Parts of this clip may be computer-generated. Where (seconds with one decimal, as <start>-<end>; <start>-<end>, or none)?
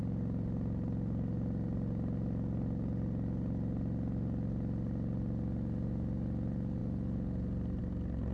none